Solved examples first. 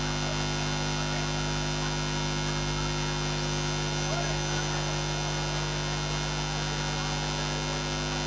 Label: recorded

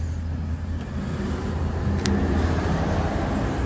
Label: recorded